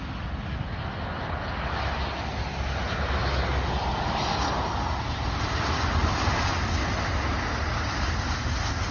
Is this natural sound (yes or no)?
yes